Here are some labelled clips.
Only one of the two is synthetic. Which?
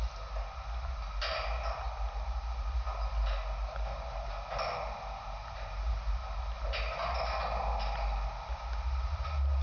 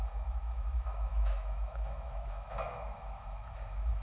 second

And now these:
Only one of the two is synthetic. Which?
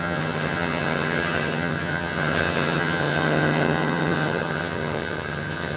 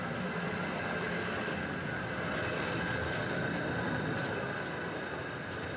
first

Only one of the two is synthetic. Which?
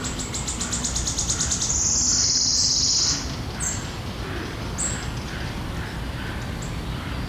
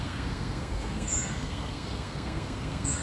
second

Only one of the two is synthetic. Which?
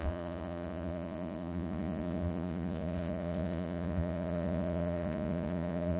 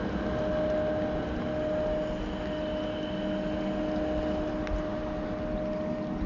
first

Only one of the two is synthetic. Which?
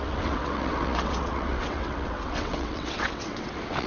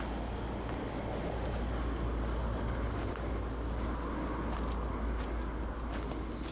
first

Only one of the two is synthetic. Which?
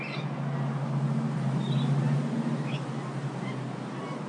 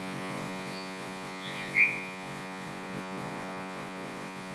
second